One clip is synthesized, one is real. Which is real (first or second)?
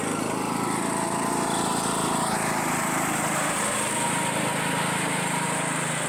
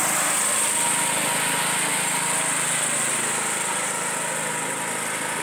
second